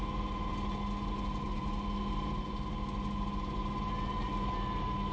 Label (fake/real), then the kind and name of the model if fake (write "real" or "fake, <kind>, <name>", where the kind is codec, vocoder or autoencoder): real